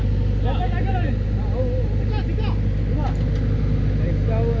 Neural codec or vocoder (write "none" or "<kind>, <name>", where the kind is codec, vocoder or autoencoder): none